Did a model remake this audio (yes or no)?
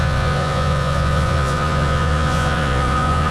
yes